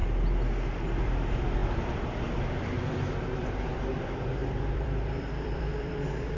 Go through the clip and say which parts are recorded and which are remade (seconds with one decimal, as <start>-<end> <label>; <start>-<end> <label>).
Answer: 0.0-1.0 recorded; 1.0-6.4 remade